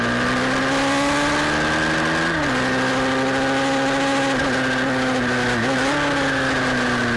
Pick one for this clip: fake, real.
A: real